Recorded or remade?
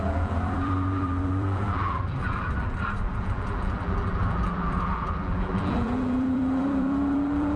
remade